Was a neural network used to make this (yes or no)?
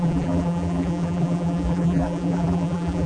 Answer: yes